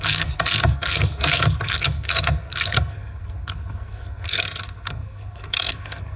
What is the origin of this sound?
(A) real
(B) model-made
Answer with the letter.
B